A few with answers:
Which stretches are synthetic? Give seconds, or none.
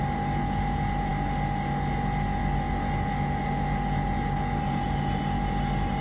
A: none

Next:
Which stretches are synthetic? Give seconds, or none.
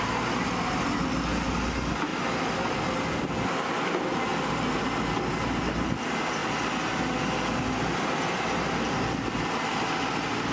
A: 2.1-2.9 (vocoder, BigVGAN v2)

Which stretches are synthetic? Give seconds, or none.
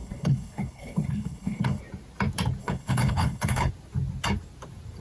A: 0.0-1.8 (codec, HILCodec); 2.6-3.7